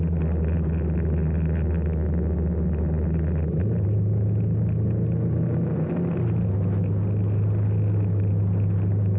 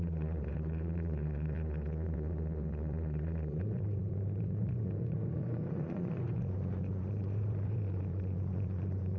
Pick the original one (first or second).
first